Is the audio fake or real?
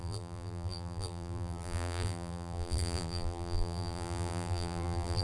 fake